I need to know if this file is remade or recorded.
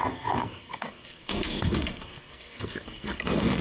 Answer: remade